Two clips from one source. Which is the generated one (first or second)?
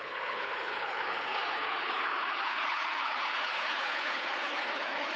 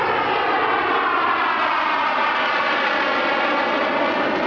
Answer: first